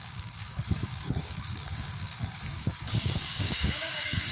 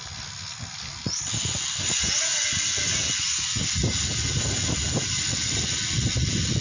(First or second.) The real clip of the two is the second